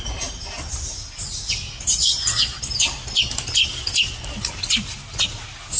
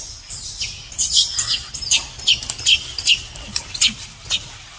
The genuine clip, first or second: first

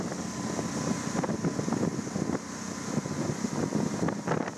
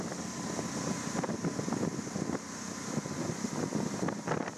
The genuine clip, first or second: first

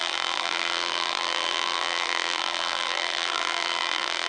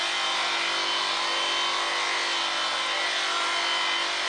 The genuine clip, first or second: second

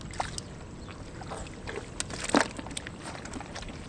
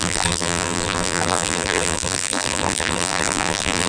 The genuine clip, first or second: first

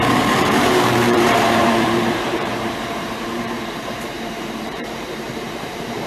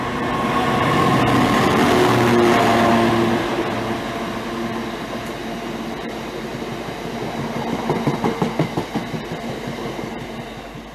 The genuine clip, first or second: second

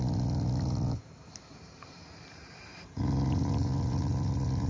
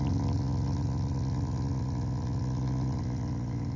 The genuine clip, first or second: second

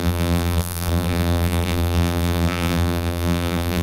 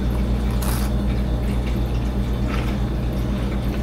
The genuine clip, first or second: second